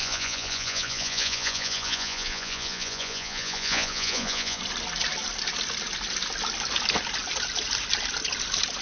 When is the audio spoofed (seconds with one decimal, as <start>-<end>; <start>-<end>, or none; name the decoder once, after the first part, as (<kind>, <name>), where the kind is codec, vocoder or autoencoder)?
0.0-4.6 (vocoder, Vocos)